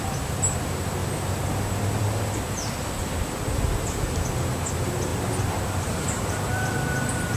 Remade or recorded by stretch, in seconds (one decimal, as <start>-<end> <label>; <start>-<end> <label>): 0.0-1.0 recorded; 1.0-2.0 remade; 2.0-5.1 recorded; 5.1-6.2 remade; 6.2-7.4 recorded